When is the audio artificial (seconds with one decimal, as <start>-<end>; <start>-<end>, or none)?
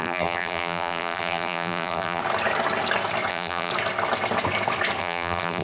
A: 0.0-2.2; 3.3-3.7; 5.0-5.6